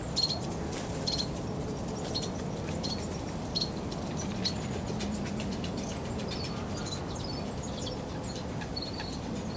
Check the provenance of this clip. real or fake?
real